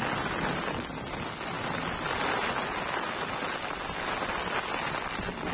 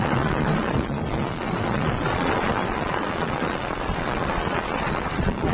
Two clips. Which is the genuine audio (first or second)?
first